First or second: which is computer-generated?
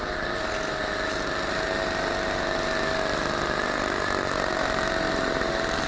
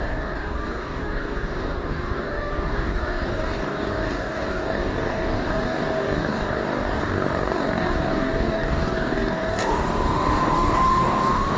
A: second